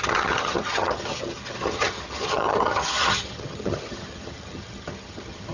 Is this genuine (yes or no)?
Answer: no